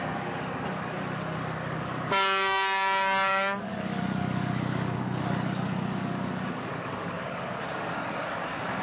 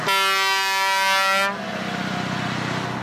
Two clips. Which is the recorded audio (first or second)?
second